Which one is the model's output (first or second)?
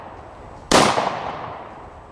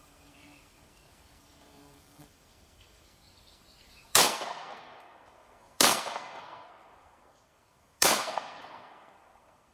second